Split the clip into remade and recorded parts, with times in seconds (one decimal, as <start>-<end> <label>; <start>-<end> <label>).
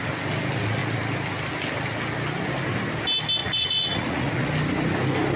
0.0-3.4 recorded; 3.4-4.5 remade; 4.5-5.4 recorded